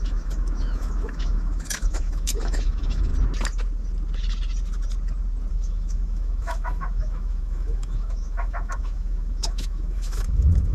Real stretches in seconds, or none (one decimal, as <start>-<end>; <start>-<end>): 3.1-5.5